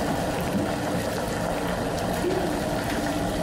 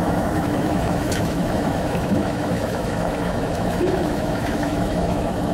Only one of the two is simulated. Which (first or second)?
second